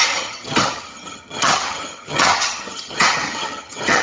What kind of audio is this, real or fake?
fake